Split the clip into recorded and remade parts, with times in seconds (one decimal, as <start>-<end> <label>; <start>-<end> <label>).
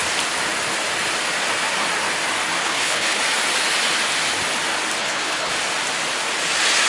0.0-2.6 recorded; 2.6-3.2 remade; 3.2-5.0 recorded; 5.0-5.5 remade; 5.5-6.9 recorded